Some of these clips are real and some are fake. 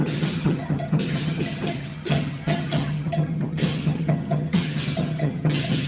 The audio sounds fake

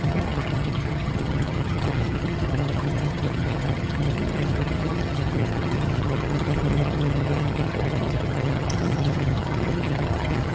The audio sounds fake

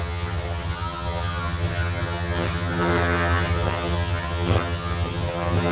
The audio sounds fake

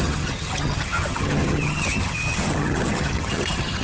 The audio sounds fake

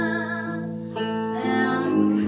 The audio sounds real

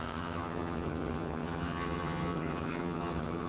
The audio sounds fake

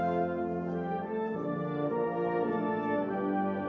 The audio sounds real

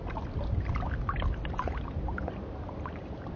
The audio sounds real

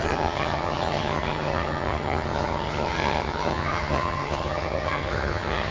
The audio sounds fake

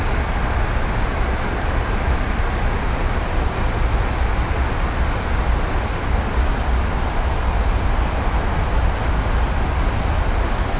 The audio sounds real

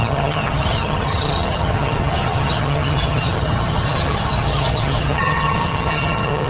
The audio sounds fake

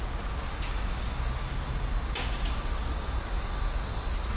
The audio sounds real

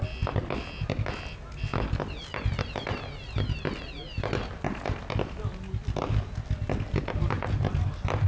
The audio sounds real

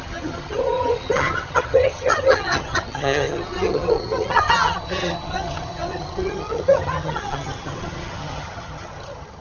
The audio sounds fake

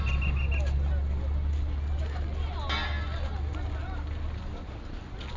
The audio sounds real